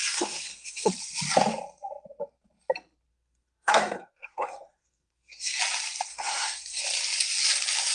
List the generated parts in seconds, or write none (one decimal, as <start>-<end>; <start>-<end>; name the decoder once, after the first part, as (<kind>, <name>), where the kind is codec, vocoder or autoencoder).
0.0-0.9 (codec, SNAC); 3.1-5.6; 6.1-6.8